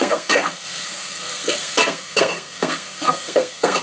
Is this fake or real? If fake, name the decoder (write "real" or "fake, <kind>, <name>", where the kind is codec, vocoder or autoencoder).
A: fake, codec, SNAC